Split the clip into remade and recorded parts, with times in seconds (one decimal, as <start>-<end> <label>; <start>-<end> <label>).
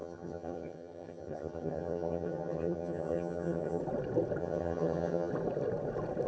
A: 0.0-3.8 remade; 3.8-4.4 recorded; 4.4-5.3 remade; 5.3-6.3 recorded